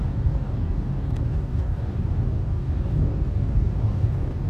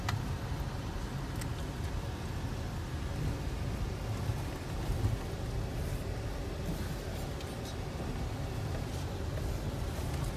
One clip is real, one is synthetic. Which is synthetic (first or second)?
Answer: first